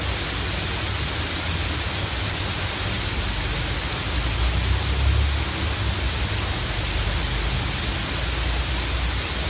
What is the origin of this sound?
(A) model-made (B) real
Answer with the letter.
B